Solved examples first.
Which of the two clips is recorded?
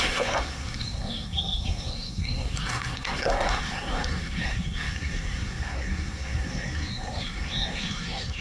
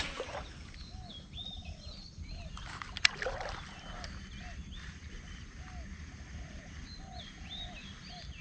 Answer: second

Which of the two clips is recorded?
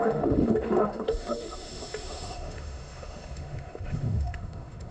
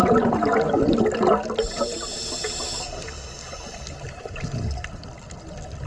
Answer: second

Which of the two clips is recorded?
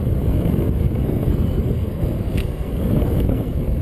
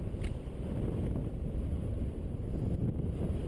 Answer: second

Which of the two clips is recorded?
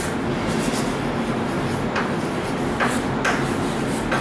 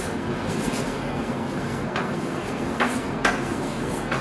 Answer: first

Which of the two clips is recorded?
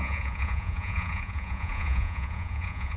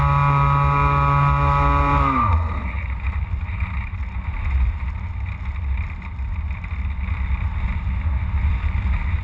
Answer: second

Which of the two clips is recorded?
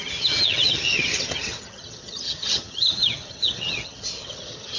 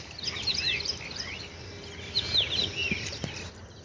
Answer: second